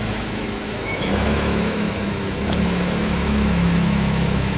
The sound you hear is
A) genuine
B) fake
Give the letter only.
B